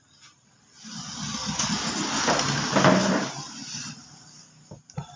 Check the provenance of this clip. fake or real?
real